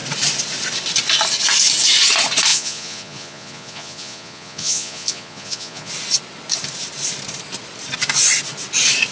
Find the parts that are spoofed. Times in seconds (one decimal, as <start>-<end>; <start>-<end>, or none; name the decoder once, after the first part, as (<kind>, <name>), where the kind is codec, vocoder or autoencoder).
2.5-5.9 (vocoder, Vocos)